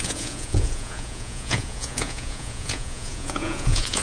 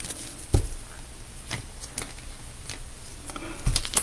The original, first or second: second